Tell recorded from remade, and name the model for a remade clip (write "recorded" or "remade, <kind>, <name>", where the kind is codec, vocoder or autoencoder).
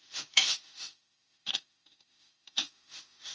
remade, autoencoder, DAC-VAE